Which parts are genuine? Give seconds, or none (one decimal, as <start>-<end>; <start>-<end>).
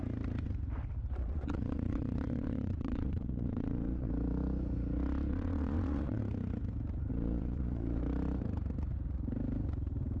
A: 0.0-1.2; 4.1-5.3; 6.2-7.1; 8.0-10.2